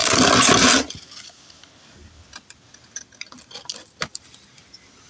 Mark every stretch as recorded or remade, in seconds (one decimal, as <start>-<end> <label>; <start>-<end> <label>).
0.0-5.1 recorded